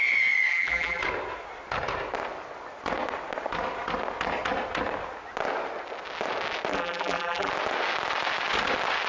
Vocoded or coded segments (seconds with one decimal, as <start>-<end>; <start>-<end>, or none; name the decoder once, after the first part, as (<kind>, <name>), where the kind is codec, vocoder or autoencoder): 0.5-1.0 (vocoder, BigVGAN v2); 6.7-7.5